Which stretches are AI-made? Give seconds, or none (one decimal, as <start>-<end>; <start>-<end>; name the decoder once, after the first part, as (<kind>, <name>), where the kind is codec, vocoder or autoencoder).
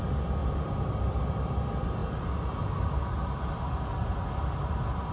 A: none